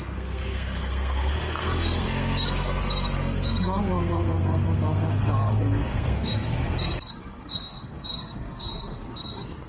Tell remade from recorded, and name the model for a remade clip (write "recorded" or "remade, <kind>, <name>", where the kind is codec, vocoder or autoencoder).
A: remade, codec, SNAC